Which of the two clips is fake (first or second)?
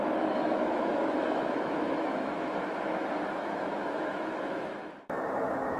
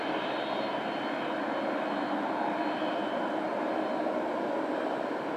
first